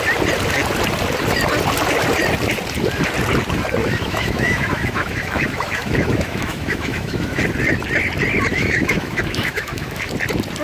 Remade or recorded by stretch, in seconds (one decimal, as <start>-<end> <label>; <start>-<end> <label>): 0.0-3.8 recorded; 3.8-7.4 remade; 7.4-8.5 recorded; 8.5-10.1 remade; 10.1-10.6 recorded